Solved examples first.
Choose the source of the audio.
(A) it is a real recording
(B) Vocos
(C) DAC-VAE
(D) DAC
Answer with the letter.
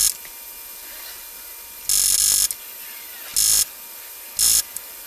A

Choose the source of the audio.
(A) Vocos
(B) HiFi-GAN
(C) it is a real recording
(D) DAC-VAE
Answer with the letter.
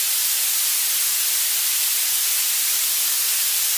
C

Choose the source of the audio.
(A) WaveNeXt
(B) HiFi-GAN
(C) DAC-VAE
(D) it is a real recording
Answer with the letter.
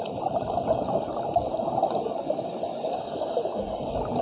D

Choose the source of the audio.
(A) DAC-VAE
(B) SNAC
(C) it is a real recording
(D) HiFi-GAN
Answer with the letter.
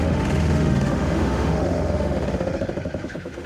A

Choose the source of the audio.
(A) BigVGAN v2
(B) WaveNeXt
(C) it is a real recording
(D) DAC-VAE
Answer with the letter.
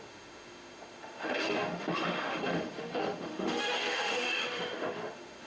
D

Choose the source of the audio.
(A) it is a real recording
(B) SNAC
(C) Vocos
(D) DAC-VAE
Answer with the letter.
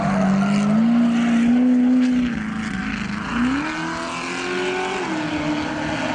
A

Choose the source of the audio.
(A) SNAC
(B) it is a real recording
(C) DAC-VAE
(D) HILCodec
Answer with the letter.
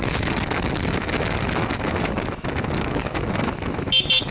C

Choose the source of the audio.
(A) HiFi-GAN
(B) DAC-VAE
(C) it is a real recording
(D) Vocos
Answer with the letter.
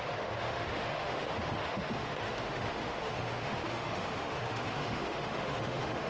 B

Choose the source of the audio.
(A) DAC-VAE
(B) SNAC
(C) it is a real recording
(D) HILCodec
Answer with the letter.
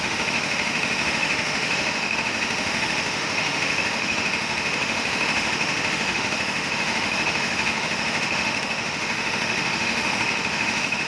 A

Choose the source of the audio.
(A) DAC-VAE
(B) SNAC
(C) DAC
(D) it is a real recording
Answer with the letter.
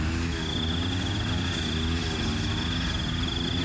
D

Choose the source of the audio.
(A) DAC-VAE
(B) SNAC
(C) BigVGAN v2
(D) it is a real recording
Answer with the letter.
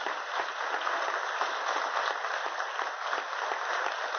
D